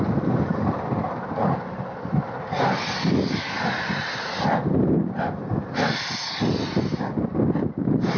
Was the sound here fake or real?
real